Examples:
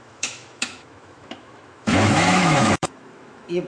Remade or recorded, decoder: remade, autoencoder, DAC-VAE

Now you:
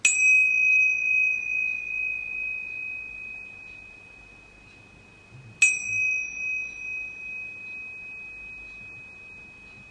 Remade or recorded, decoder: recorded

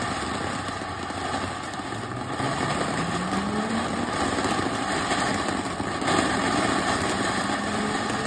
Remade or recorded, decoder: recorded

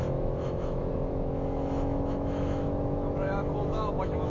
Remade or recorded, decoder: remade, autoencoder, DAC-VAE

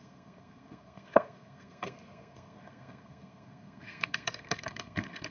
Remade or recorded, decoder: remade, codec, SNAC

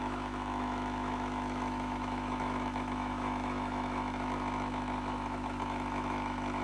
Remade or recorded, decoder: remade, autoencoder, DAC-VAE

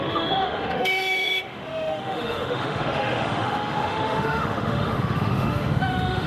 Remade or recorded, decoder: remade, autoencoder, DAC-VAE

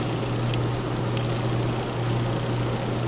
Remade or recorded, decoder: recorded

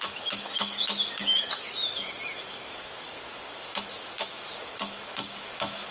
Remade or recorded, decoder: remade, autoencoder, DAC-VAE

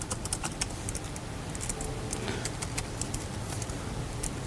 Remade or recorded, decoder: remade, vocoder, BigVGAN v2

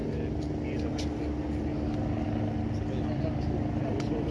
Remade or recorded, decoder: recorded